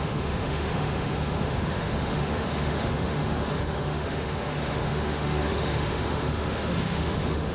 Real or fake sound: fake